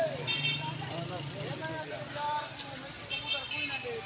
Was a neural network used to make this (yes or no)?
no